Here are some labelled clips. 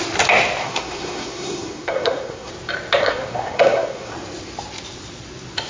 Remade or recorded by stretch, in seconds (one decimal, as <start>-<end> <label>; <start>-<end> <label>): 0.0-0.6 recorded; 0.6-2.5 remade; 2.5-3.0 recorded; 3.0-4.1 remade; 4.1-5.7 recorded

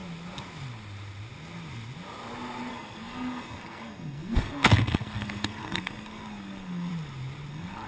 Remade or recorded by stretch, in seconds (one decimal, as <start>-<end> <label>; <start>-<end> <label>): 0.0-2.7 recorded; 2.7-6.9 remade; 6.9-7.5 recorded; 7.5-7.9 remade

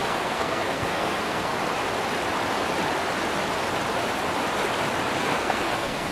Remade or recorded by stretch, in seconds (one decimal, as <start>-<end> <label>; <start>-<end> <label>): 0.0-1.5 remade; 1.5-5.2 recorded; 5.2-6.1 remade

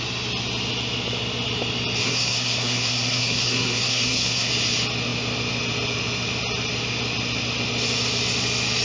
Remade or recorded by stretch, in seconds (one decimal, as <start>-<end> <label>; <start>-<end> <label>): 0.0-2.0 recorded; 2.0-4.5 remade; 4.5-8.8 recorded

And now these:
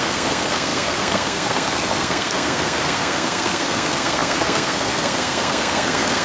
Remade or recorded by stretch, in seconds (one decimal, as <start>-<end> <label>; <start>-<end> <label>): 0.0-6.2 remade

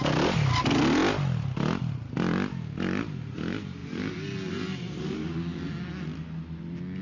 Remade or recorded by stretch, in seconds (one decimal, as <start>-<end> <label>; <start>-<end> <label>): 0.0-7.0 recorded